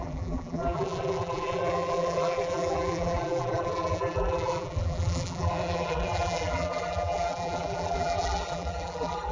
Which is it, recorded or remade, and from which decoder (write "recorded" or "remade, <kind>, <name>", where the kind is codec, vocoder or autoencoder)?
remade, vocoder, BigVGAN v2